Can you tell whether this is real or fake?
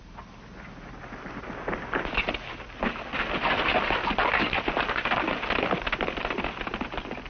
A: real